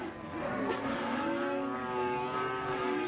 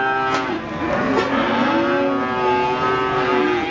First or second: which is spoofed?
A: first